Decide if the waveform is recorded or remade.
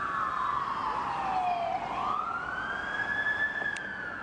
recorded